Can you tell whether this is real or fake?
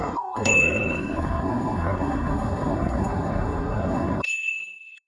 fake